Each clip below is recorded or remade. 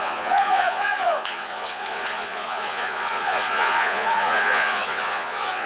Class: remade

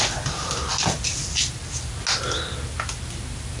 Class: recorded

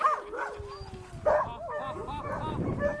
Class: recorded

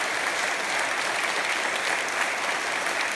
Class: recorded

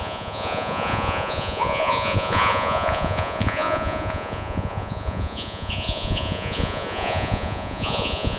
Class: remade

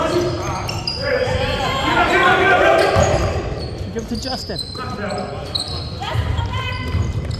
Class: remade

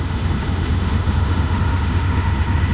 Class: remade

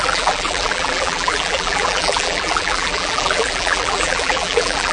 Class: remade